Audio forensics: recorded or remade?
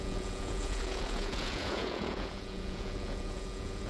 remade